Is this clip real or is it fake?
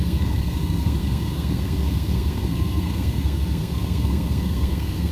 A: fake